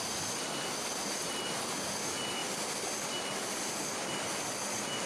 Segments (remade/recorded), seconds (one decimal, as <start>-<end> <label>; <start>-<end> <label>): 0.0-5.1 recorded